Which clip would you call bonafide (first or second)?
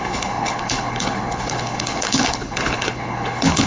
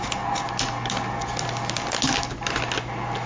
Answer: second